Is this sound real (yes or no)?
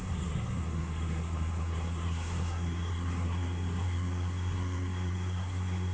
no